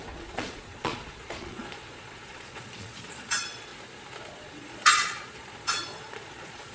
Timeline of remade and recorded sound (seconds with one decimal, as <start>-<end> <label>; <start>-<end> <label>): 0.0-3.7 remade; 3.7-4.3 recorded; 4.3-6.7 remade